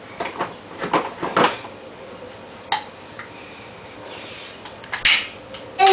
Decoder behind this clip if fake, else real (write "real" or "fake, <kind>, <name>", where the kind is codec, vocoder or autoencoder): real